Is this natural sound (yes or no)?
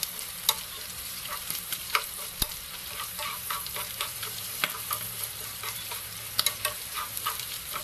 no